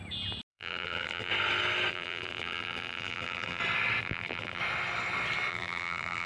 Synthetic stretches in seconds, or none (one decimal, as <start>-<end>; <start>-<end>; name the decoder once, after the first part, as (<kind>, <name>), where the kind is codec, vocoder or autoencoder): 0.5-1.3 (vocoder, BigVGAN v2); 1.9-3.6; 4.0-4.6; 5.5-6.3